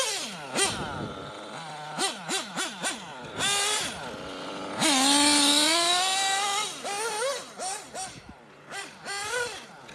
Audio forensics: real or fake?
real